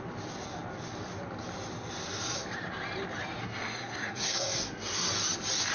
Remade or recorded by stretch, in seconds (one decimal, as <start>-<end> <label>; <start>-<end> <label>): 0.0-3.4 recorded; 3.4-5.1 remade; 5.1-5.7 recorded